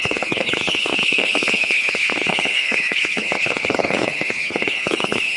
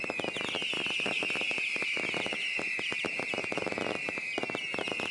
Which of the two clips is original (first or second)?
second